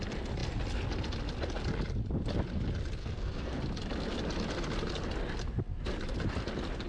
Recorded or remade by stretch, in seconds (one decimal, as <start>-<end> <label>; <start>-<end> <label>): 0.0-3.0 recorded; 3.0-3.6 remade; 3.6-6.9 recorded